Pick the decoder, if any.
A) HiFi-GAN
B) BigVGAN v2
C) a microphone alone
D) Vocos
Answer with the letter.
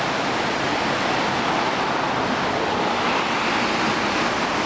C